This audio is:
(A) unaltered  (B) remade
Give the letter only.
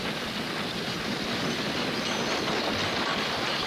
A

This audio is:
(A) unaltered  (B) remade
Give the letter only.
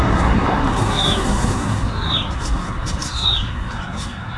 B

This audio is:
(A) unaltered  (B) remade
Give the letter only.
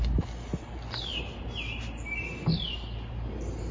A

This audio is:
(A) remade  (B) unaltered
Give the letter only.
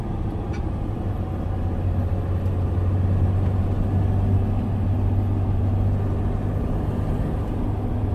B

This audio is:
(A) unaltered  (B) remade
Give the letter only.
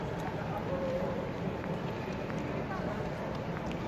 A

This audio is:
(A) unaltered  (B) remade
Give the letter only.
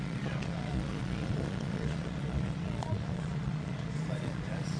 B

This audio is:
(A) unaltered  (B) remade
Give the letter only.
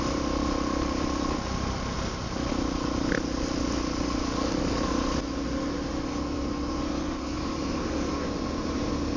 A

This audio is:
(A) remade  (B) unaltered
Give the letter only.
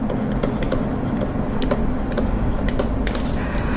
B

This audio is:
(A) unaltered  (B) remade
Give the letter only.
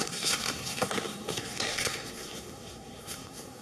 B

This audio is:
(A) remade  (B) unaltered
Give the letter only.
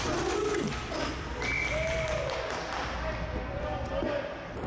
B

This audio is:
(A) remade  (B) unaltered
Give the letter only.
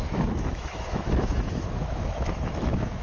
A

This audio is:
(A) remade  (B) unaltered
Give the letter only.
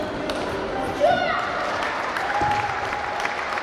A